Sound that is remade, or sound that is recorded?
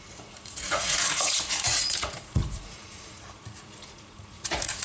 remade